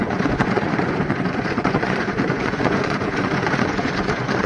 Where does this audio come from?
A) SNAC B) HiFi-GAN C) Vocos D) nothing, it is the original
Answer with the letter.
C